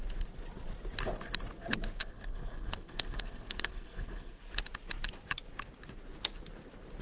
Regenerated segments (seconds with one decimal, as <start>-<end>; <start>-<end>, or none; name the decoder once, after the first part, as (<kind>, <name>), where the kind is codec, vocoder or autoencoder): 2.0-4.4 (codec, SNAC)